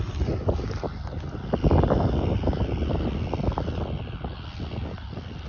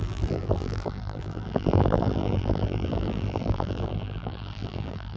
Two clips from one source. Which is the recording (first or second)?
first